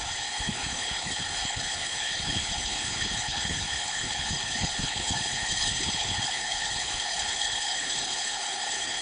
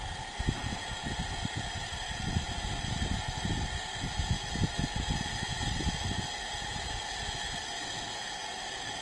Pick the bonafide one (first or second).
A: second